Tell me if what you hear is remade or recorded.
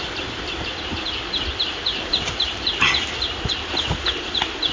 remade